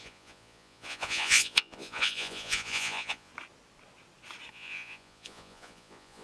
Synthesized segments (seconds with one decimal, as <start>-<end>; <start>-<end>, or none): 0.0-3.3; 4.5-6.2